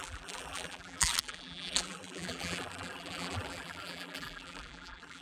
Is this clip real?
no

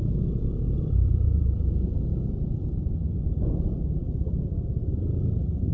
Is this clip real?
yes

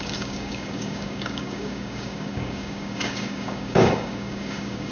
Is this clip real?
no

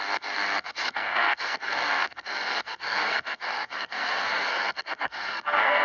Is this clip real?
no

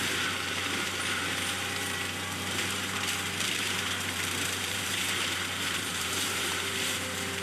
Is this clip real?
no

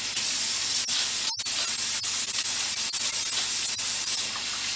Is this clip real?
yes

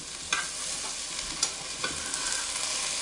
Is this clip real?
yes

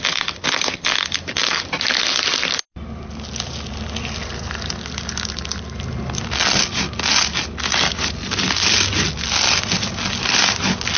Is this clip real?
yes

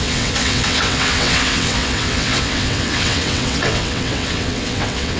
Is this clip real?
no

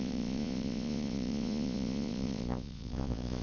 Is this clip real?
no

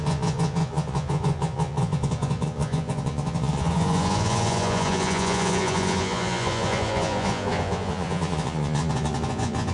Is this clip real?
no